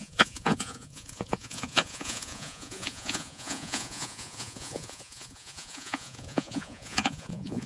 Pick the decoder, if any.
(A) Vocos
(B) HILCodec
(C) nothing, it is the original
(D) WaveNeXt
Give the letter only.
A